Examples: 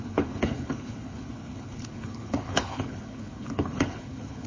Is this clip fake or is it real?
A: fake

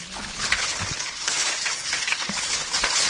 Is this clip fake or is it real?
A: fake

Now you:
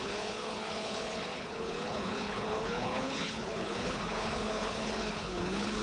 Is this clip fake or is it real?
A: fake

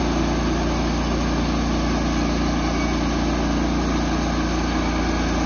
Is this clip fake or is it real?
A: real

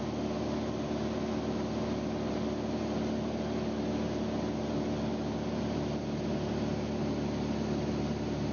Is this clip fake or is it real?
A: real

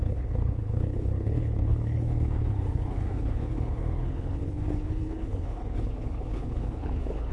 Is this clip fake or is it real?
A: fake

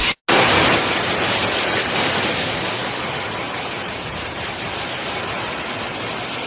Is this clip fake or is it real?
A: real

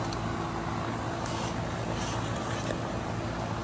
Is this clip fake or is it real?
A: real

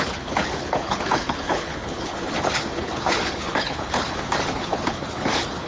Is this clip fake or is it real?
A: fake